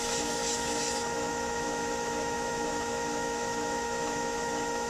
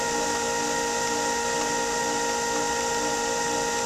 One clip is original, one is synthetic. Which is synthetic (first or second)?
first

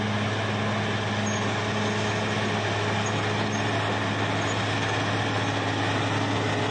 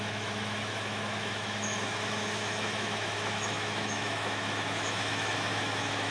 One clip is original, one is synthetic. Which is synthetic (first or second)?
second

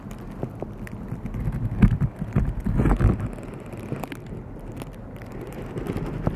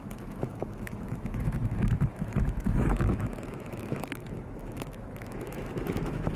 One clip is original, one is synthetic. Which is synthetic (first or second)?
second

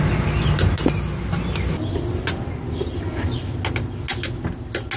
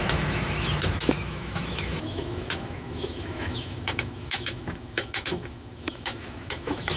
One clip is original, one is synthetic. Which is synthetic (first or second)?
second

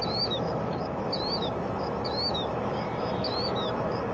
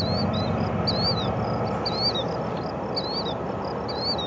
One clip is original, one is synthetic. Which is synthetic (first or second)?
first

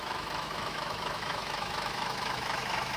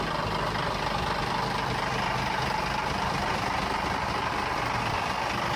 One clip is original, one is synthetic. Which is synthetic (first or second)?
first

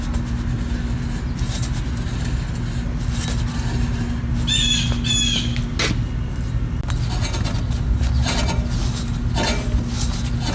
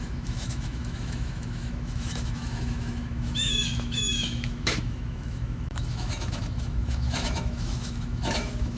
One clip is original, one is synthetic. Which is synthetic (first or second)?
second